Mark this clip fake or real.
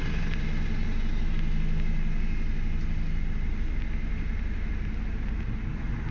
real